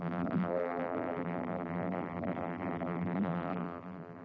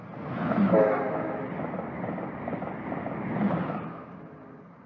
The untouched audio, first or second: second